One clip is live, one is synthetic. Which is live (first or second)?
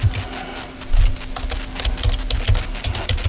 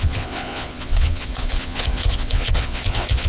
first